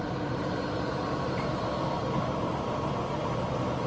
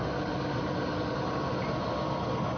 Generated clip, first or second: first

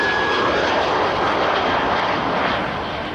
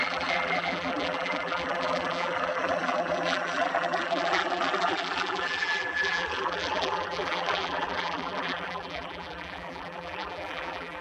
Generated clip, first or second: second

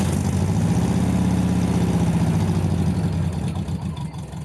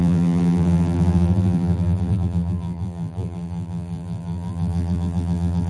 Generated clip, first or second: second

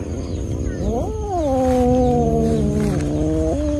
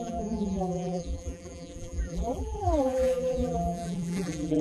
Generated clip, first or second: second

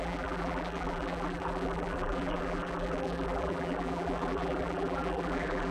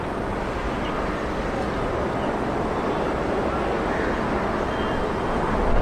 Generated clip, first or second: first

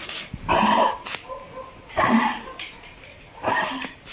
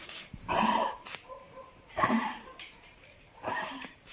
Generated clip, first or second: second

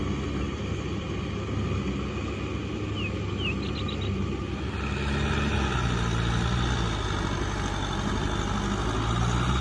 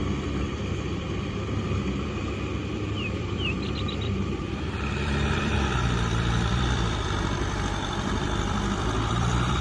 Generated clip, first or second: second